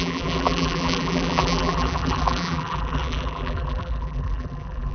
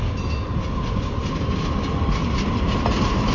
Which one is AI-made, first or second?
first